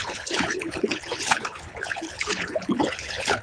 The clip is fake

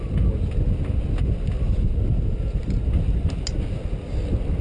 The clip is real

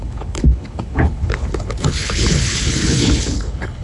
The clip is fake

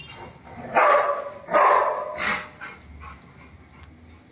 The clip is real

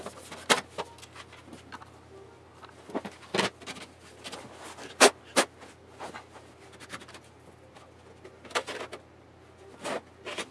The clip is real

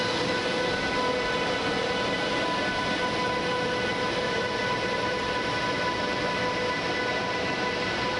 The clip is real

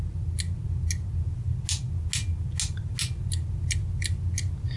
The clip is real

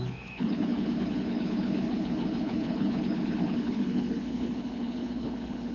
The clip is fake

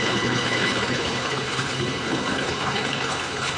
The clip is fake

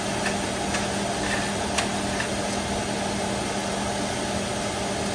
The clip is real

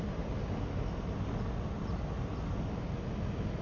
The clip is real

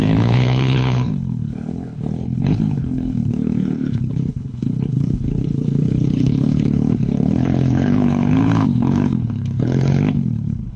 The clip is fake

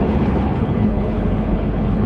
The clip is fake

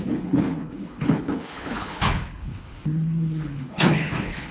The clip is fake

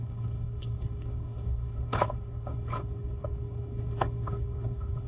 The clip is fake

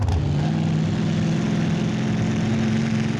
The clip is real